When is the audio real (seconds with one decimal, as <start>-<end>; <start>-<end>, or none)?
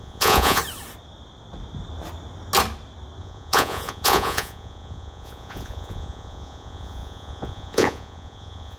0.6-3.2